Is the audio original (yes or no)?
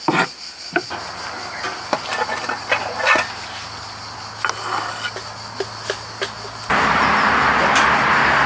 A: yes